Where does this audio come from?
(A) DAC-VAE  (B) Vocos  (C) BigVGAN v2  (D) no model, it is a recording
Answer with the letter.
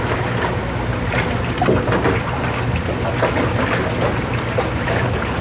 D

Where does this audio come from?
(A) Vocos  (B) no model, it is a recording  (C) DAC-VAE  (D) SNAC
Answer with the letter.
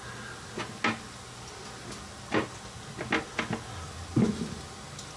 B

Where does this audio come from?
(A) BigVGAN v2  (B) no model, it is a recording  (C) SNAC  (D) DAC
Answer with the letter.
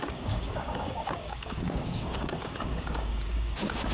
D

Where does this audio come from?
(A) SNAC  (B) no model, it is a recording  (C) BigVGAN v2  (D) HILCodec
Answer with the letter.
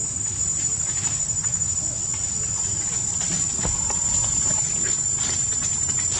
B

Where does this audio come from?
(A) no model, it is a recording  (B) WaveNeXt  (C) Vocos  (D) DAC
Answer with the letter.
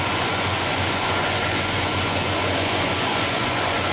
C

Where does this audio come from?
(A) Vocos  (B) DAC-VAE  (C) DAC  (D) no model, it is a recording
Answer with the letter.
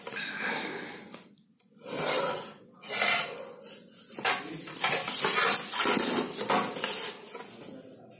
D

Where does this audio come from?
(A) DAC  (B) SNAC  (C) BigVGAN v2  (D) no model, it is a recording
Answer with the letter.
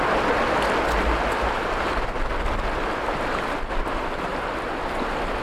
D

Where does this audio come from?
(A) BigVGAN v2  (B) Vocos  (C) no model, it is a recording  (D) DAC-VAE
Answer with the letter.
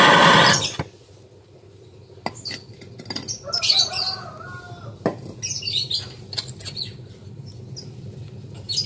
C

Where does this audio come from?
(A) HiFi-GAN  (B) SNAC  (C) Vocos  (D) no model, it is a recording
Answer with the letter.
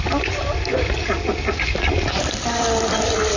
D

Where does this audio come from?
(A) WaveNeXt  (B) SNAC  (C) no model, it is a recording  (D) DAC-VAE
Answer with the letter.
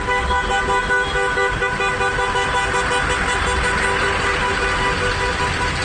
C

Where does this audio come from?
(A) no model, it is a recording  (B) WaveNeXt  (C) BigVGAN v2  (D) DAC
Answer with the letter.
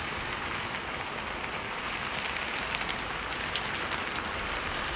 C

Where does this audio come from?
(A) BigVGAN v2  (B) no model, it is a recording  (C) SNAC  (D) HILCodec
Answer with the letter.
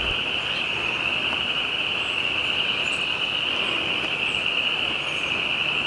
B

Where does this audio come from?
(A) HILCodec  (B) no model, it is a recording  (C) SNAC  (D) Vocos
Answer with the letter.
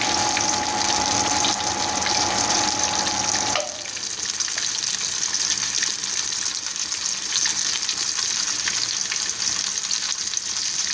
B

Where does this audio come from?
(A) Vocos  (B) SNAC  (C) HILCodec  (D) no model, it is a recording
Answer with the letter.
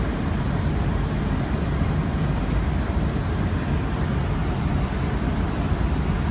D